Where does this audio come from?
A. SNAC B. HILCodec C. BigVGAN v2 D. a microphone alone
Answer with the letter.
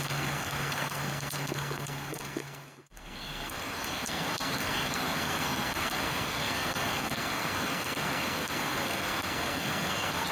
A